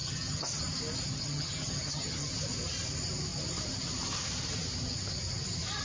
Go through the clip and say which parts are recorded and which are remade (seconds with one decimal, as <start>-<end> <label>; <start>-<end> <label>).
0.0-0.6 remade; 0.6-1.1 recorded; 1.1-2.3 remade; 2.3-5.8 recorded